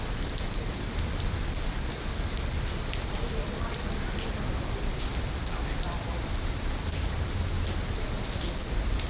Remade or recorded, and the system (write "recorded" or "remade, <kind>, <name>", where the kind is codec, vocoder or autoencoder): remade, vocoder, BigVGAN v2